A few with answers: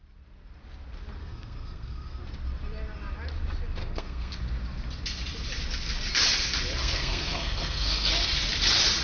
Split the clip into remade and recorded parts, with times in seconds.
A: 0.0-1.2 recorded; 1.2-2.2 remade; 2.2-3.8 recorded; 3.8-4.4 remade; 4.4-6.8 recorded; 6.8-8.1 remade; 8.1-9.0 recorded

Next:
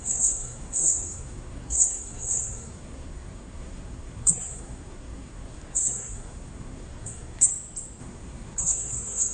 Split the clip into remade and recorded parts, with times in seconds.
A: 0.0-7.5 remade; 7.5-8.0 recorded; 8.0-9.3 remade

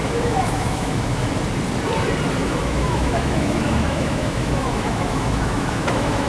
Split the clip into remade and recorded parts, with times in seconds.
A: 0.0-1.3 remade; 1.3-2.4 recorded; 2.4-6.3 remade

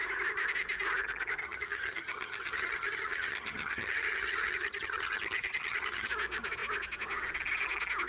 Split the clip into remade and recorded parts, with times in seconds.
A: 0.0-1.4 recorded; 1.4-6.1 remade; 6.1-8.1 recorded

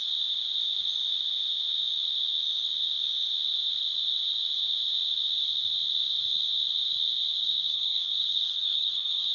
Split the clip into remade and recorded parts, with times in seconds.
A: 0.0-7.4 recorded; 7.4-9.3 remade

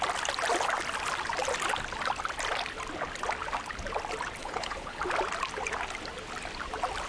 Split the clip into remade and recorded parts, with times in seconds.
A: 0.0-4.4 recorded; 4.4-5.0 remade; 5.0-7.1 recorded

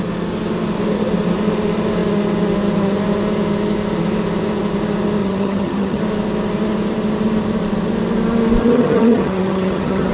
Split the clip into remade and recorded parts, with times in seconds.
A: 0.0-5.2 recorded; 5.2-6.0 remade; 6.0-8.6 recorded; 8.6-10.1 remade